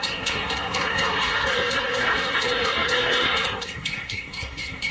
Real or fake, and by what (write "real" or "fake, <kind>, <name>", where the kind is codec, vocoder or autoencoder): fake, codec, SNAC